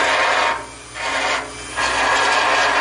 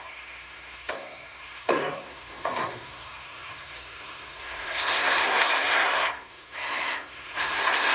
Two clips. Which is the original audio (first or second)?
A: first